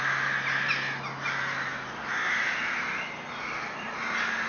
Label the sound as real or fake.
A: real